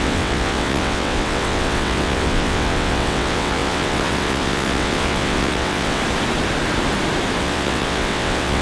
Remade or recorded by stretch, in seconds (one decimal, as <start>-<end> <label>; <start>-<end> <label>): 0.0-6.0 remade; 6.0-7.4 recorded; 7.4-8.6 remade